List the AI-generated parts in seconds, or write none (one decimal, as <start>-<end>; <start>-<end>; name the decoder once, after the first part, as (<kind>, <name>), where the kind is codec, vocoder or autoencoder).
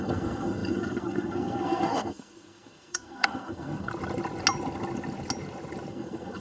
0.0-3.9 (codec, SNAC); 5.9-6.4